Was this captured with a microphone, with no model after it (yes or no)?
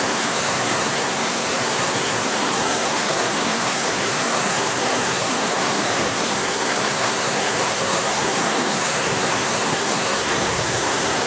no